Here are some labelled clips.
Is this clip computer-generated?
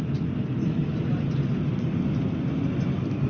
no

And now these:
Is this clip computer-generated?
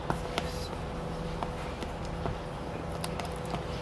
no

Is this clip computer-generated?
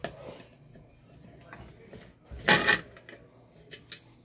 no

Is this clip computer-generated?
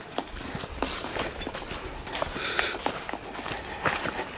no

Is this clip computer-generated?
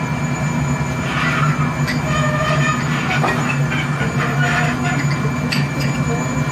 no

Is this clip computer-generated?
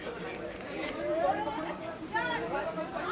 yes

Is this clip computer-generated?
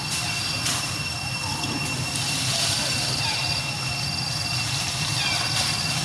no